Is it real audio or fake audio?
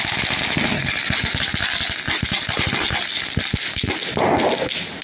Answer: real